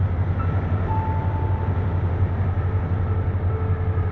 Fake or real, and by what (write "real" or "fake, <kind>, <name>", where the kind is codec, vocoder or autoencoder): real